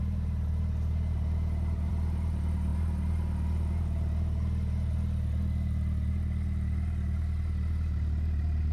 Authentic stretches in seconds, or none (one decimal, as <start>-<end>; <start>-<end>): 1.9-8.7